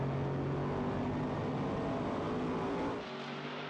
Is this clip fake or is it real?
real